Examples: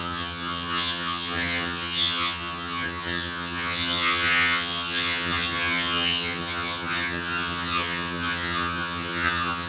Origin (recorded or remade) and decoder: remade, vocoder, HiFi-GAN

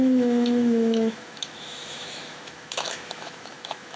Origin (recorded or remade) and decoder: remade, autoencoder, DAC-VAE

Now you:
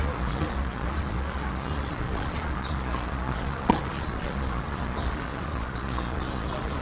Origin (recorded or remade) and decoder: remade, vocoder, Vocos